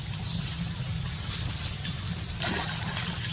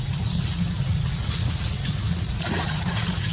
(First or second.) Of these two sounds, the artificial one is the second